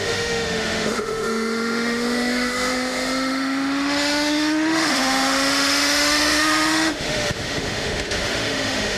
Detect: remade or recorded remade